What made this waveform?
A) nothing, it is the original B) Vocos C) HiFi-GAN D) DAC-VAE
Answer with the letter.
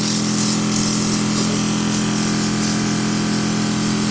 A